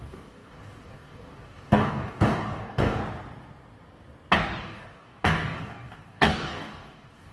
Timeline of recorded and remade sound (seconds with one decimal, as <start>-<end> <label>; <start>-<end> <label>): 0.0-3.0 remade; 3.0-4.6 recorded; 4.6-7.3 remade